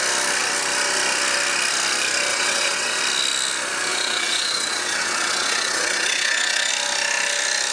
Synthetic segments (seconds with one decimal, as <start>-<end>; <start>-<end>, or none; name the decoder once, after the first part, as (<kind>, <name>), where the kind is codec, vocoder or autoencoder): 2.3-3.0 (vocoder, WaveNeXt); 3.9-6.7